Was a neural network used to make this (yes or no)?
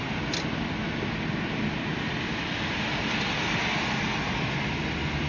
no